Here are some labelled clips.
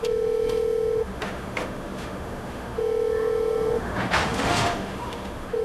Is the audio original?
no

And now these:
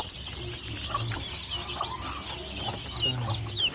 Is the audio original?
yes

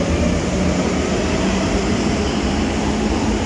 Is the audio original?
yes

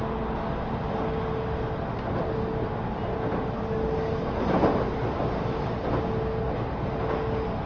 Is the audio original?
yes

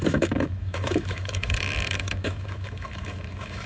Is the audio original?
no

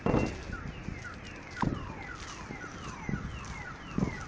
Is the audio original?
yes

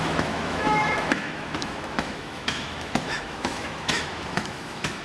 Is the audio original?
no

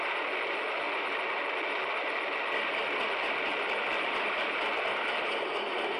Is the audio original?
yes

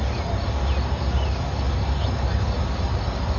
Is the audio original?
yes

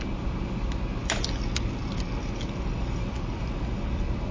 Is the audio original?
yes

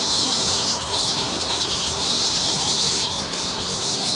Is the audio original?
no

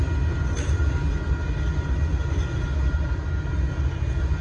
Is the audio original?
yes